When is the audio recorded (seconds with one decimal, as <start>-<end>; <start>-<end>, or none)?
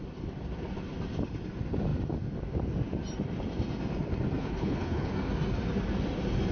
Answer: 0.0-4.4; 5.1-6.5